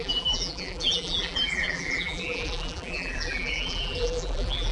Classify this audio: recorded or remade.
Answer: remade